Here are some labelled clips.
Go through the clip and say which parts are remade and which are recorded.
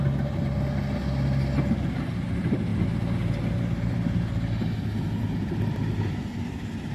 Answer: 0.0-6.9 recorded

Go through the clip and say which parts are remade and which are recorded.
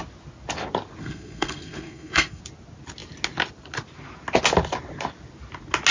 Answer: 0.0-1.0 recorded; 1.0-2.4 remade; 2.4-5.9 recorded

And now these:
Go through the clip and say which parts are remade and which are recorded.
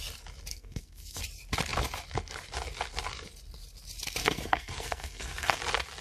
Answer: 0.0-0.5 recorded; 0.5-1.2 remade; 1.2-4.2 recorded; 4.2-5.6 remade; 5.6-6.0 recorded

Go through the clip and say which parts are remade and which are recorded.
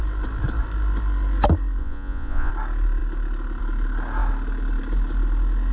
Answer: 0.0-1.8 recorded; 1.8-2.5 remade; 2.5-5.7 recorded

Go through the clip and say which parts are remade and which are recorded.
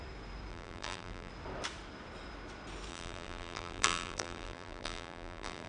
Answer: 0.0-0.5 recorded; 0.5-1.3 remade; 1.3-2.9 recorded; 2.9-5.7 remade